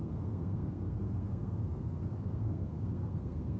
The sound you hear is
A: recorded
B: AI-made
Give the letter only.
B